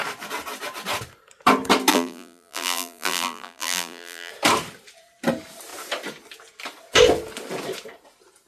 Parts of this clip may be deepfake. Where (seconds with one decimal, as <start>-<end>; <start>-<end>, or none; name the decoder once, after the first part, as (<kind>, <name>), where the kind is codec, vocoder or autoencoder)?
1.9-4.3 (vocoder, BigVGAN v2)